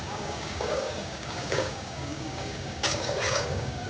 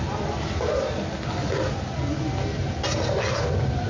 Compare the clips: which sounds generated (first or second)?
first